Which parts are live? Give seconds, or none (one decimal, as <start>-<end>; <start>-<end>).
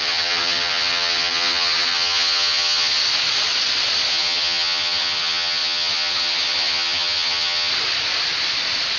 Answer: 3.0-4.1; 7.7-9.0